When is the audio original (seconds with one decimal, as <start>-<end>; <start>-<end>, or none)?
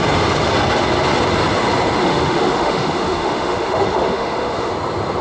0.0-2.0; 4.7-5.2